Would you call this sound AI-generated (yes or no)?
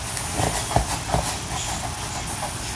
no